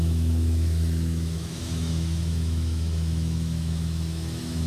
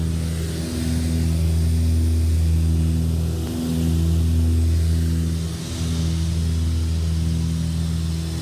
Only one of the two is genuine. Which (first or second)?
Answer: second